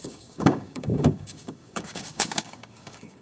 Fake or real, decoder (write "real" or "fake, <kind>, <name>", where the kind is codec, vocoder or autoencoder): fake, codec, DAC